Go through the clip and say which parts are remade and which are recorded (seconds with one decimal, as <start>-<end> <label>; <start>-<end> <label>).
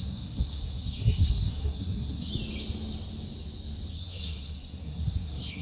0.0-2.3 remade; 2.3-3.9 recorded; 3.9-5.6 remade